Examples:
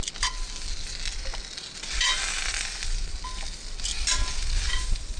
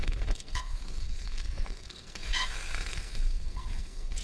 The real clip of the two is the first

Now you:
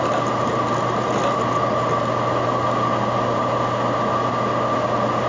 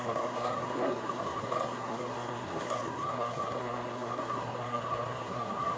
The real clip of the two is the first